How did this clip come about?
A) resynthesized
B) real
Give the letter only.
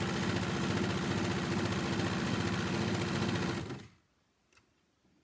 B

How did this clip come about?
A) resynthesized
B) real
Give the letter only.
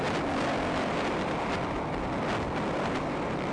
B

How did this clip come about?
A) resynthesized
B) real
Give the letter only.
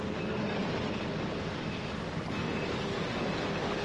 B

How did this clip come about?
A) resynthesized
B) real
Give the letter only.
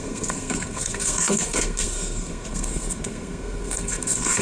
A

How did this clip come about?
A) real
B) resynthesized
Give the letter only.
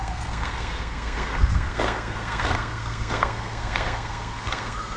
B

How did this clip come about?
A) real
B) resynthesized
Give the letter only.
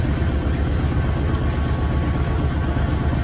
A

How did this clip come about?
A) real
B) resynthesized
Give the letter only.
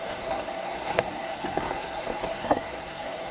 B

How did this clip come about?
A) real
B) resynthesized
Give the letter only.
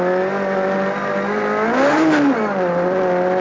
A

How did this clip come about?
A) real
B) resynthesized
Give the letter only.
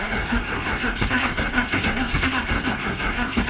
B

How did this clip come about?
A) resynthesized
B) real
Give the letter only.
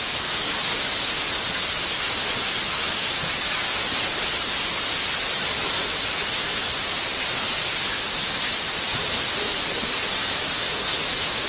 B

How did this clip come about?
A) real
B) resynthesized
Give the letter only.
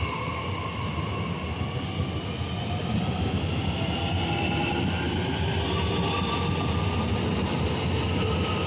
A